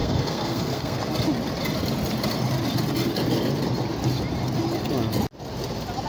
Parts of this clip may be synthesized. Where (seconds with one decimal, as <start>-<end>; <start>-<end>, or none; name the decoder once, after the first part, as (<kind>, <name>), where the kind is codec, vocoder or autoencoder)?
0.0-1.0 (codec, SNAC)